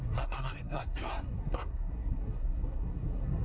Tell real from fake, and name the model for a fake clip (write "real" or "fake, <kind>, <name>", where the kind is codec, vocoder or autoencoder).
fake, codec, SNAC